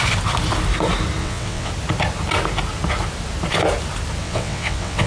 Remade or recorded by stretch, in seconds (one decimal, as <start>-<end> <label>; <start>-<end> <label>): 0.0-1.2 recorded; 1.2-1.7 remade; 1.7-4.2 recorded; 4.2-5.1 remade